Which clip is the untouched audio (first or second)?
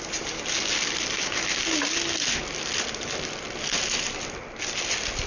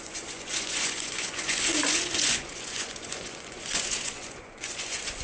first